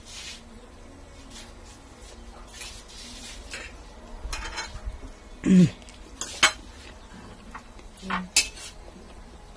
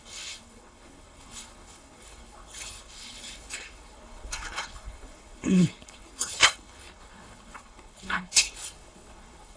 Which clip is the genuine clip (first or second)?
first